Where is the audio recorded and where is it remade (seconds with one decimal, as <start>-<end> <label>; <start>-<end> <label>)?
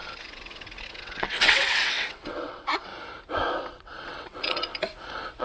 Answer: 0.0-2.9 remade; 2.9-3.7 recorded; 3.7-4.7 remade; 4.7-5.4 recorded